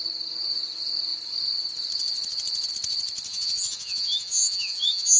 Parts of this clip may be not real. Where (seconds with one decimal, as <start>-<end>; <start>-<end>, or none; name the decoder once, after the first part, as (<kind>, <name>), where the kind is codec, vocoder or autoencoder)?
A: 3.3-5.2 (vocoder, Vocos)